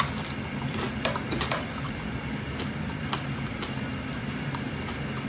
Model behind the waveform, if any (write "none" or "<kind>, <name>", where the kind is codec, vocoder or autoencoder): none